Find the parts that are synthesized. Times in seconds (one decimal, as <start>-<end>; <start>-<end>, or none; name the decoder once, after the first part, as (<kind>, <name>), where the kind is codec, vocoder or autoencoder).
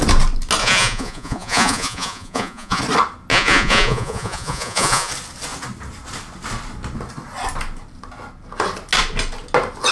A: 0.6-2.8 (vocoder, Vocos); 3.3-5.1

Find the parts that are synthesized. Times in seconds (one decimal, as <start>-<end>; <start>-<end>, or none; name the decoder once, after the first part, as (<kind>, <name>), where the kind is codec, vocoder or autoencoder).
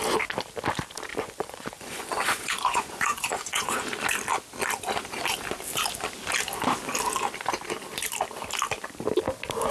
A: 1.1-3.8 (vocoder, Vocos)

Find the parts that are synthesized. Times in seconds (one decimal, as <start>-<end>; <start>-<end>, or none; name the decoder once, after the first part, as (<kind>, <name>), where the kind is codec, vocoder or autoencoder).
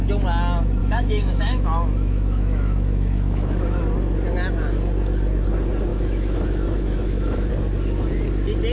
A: 0.8-3.8 (autoencoder, DAC-VAE); 5.9-7.5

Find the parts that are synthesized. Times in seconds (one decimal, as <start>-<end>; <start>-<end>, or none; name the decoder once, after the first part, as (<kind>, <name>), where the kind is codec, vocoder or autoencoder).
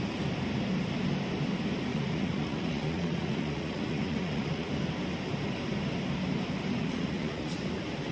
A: 1.9-4.7 (vocoder, Vocos); 6.8-7.6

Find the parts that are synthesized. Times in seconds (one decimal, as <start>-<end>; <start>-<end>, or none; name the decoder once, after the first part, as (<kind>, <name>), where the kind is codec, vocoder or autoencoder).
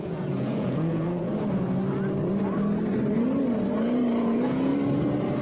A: 0.0-1.3 (vocoder, Vocos); 4.2-4.7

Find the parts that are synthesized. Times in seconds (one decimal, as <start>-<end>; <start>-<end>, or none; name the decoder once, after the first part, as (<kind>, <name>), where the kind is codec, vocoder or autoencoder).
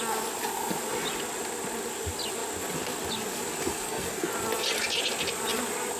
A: 3.7-4.3 (codec, SNAC)